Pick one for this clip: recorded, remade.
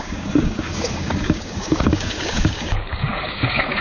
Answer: remade